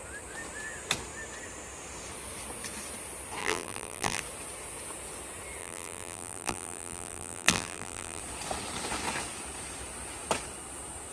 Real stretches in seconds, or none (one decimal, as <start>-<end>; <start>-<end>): 0.0-3.4; 4.2-5.6; 8.2-11.1